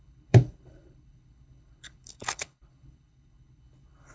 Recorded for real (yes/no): no